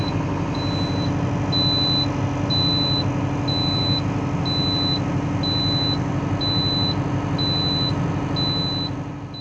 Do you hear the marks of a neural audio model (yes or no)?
no